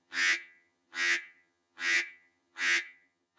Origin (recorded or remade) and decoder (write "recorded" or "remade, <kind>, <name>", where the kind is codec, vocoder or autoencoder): remade, vocoder, HiFi-GAN